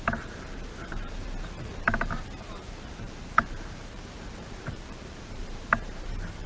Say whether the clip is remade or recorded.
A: remade